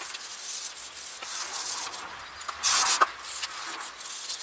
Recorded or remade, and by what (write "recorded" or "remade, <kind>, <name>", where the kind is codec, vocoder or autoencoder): recorded